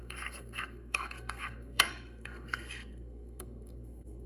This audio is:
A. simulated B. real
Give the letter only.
A